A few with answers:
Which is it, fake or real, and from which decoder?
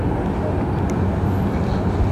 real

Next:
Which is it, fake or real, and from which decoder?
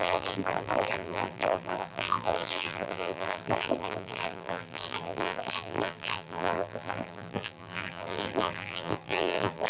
fake, vocoder, BigVGAN v2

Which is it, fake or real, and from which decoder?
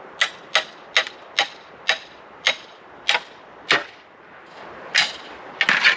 real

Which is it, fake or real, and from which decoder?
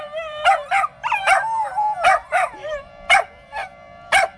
fake, vocoder, BigVGAN v2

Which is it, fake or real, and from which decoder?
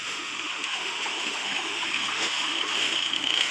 fake, autoencoder, DAC-VAE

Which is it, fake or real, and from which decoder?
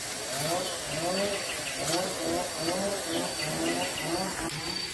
real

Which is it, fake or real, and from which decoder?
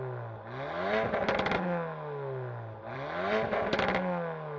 real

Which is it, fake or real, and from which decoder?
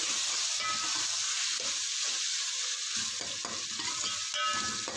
real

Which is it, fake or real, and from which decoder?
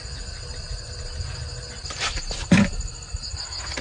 real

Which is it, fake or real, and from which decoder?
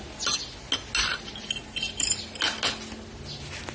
real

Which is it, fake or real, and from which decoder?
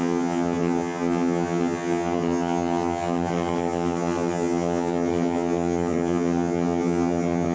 fake, vocoder, HiFi-GAN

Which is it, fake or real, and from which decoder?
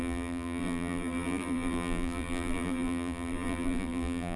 fake, vocoder, BigVGAN v2